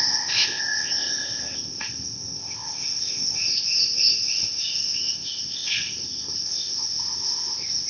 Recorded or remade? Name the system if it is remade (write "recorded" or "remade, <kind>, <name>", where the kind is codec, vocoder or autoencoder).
remade, codec, ZipCodec